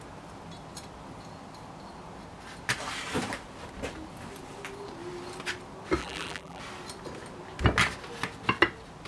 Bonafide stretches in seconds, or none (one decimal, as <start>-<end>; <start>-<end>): 0.0-6.0; 6.6-9.1